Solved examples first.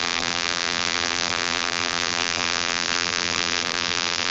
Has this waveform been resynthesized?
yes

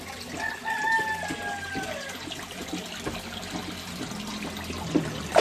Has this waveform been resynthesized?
no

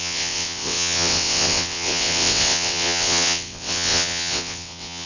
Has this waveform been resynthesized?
yes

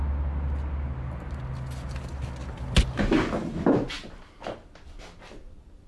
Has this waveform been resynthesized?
no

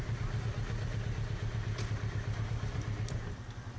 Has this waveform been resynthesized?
no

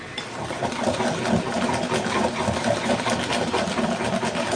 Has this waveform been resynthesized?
no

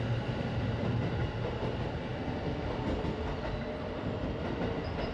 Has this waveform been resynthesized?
no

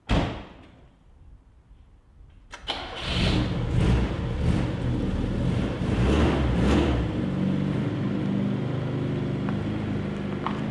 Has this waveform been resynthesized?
no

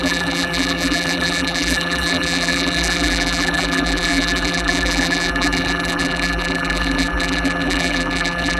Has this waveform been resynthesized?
yes